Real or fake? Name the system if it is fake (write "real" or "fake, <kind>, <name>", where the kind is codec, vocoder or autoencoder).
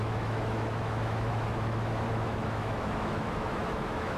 fake, autoencoder, DAC-VAE